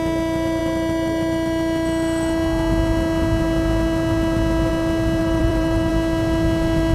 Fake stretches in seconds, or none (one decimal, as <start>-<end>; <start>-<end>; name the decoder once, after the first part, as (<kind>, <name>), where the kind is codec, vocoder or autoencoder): 5.2-5.9 (vocoder, BigVGAN v2)